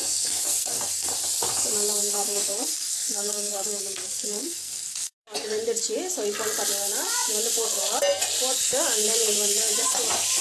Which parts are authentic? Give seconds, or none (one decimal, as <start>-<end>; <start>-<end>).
1.1-2.0; 5.1-10.4